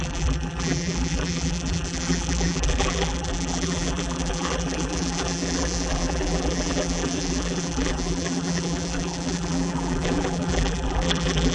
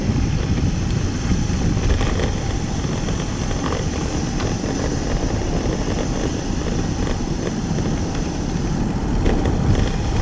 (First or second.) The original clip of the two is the second